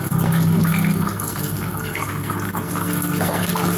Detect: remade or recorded remade